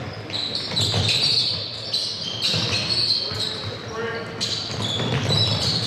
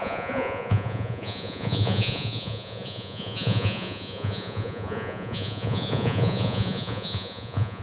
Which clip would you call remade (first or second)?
second